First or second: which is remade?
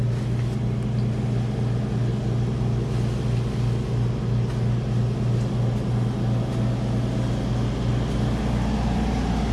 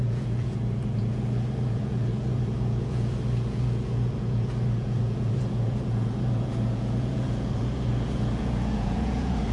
second